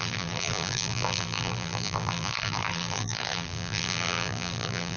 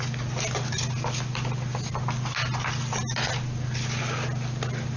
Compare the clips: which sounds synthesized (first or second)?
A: first